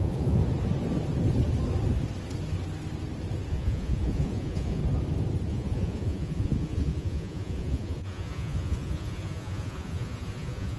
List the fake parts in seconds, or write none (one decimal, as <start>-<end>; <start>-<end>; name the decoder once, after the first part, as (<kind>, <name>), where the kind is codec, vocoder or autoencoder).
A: 0.0-0.4 (vocoder, Vocos); 3.5-4.8; 5.5-10.8